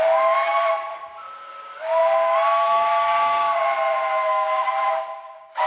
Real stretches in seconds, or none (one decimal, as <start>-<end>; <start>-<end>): 1.0-1.5